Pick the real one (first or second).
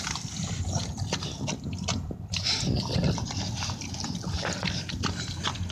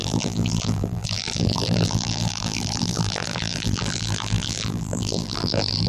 first